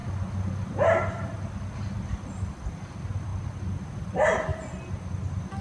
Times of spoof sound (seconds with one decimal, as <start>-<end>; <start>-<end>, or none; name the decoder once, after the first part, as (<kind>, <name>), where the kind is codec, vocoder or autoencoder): none